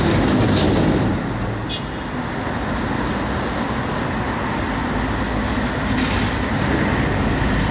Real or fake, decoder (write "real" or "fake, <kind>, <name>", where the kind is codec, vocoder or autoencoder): real